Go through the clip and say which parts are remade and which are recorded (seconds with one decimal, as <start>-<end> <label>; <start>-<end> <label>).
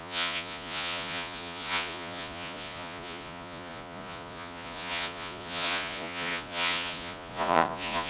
0.0-8.1 remade